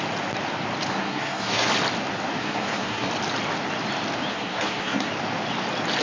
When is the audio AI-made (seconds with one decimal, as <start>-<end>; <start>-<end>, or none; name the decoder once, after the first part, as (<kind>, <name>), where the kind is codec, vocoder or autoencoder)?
0.9-1.7 (codec, SNAC); 2.4-3.1; 4.3-5.1